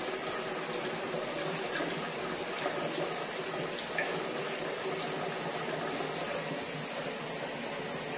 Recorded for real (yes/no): yes